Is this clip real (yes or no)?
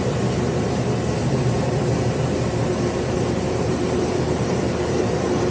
no